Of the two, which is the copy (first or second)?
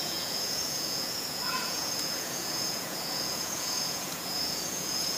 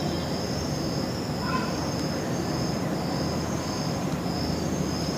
first